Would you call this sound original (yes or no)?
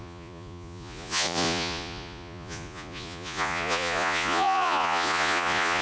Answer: no